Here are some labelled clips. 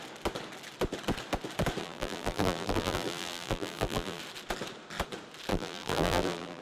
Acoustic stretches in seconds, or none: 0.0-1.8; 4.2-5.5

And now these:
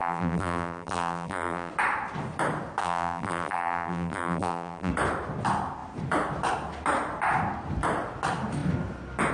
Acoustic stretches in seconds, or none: 1.7-2.8; 4.9-9.3